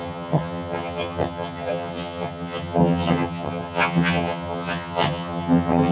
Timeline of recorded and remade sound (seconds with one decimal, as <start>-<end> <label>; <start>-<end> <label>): 0.0-5.9 remade